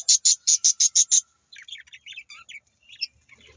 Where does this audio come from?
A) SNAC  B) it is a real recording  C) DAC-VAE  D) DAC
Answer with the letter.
B